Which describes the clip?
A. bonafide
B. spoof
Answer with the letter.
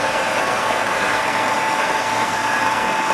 B